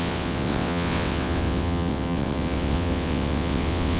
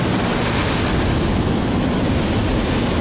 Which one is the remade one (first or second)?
first